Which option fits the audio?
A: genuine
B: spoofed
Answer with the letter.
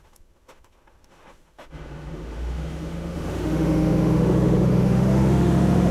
B